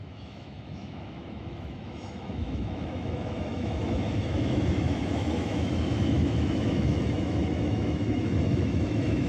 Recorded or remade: remade